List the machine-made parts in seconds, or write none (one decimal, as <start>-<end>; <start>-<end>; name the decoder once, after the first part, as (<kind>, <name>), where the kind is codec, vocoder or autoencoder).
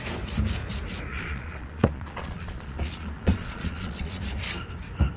1.1-4.2 (vocoder, Vocos)